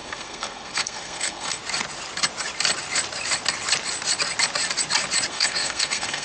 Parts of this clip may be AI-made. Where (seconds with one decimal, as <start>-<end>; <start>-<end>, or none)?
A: 0.0-1.6; 5.3-6.2